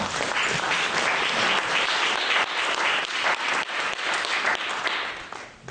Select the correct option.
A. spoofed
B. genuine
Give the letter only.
B